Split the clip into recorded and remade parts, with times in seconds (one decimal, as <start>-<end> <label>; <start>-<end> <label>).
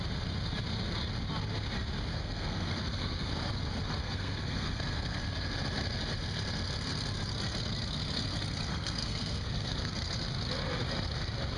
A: 0.0-2.1 recorded; 2.1-3.3 remade; 3.3-4.0 recorded; 4.0-5.2 remade; 5.2-8.7 recorded; 8.7-9.9 remade; 9.9-11.6 recorded